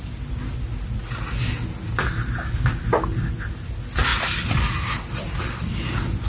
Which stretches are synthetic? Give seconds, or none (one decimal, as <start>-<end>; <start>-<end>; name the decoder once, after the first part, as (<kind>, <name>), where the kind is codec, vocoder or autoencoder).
none

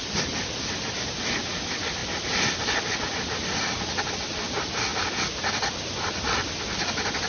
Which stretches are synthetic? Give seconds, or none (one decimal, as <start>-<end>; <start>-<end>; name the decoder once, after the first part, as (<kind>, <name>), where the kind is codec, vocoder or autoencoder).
none